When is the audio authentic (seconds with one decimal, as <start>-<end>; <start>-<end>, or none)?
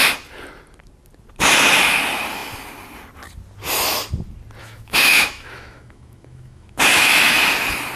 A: 0.0-4.6; 7.4-8.0